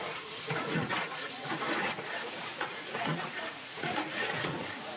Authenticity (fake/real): fake